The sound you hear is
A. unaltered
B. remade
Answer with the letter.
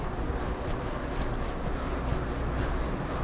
A